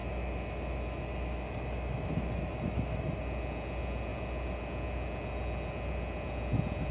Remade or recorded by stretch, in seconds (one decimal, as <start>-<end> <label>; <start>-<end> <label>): 0.0-3.2 remade; 3.2-6.9 recorded